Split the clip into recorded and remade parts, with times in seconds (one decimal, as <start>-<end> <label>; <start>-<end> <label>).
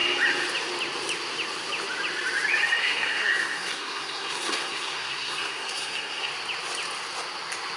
0.0-2.8 recorded; 2.8-6.3 remade; 6.3-7.8 recorded